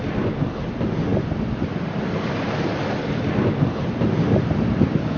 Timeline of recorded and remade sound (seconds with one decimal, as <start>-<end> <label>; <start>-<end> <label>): 0.0-5.2 recorded